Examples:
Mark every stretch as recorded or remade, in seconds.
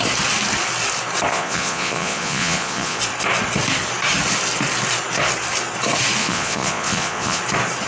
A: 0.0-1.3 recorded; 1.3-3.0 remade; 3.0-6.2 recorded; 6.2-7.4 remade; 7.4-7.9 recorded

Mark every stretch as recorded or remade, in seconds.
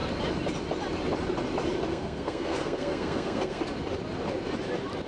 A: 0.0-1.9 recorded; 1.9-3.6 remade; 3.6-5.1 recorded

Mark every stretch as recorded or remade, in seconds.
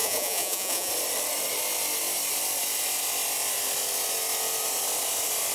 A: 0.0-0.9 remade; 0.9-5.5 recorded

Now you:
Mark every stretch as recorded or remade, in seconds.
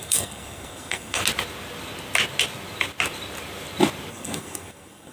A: 0.0-1.2 remade; 1.2-4.1 recorded; 4.1-5.1 remade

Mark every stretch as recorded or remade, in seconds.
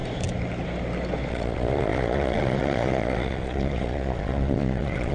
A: 0.0-1.3 recorded; 1.3-5.1 remade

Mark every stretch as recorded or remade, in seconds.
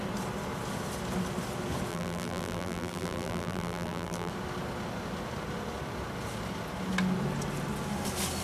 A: 0.0-1.9 recorded; 1.9-4.3 remade; 4.3-8.4 recorded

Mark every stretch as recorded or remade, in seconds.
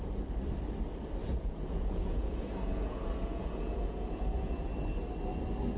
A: 0.0-1.2 recorded; 1.2-4.7 remade; 4.7-5.8 recorded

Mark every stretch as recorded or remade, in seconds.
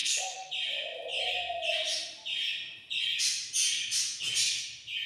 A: 0.0-0.5 remade; 0.5-5.1 recorded